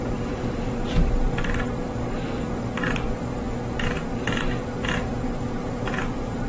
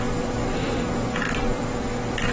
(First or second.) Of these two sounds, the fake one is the first